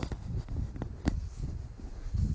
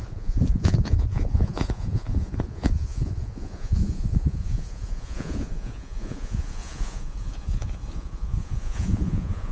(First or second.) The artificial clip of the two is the second